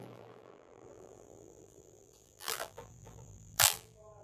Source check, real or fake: fake